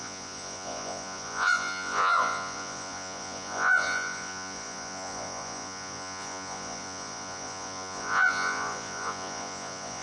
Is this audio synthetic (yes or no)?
yes